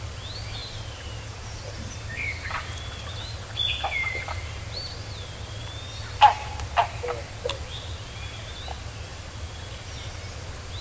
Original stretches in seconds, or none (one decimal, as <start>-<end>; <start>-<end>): 0.0-10.8